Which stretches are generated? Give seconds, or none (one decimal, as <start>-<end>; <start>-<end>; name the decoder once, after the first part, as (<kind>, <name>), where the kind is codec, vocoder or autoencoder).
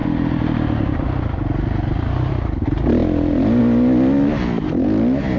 0.0-2.3 (vocoder, BigVGAN v2)